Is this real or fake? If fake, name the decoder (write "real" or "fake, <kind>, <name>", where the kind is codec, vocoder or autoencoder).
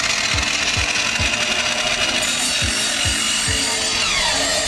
real